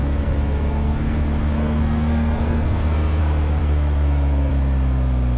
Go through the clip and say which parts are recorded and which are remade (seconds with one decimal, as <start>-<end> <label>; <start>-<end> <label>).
0.0-3.2 remade; 3.2-3.6 recorded; 3.6-4.5 remade; 4.5-5.4 recorded